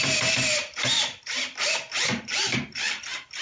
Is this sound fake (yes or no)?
yes